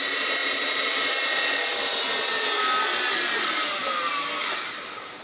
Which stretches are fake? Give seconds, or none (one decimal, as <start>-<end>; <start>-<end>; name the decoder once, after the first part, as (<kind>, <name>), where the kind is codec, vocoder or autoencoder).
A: none